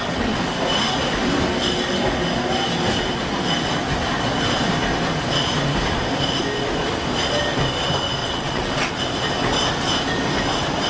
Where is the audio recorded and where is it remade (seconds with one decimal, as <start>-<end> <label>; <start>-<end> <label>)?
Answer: 0.0-8.2 recorded; 8.2-8.9 remade; 8.9-10.9 recorded